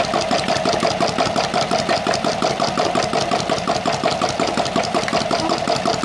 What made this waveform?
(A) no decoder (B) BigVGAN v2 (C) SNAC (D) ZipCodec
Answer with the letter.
A